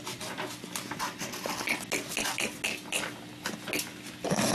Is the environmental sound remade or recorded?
recorded